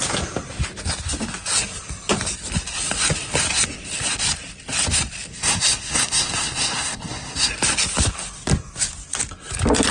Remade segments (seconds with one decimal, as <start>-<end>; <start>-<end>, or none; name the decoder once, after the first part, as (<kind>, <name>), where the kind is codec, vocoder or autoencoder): 5.3-7.5 (codec, SNAC)